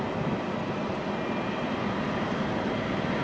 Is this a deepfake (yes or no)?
no